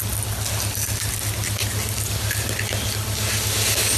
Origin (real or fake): real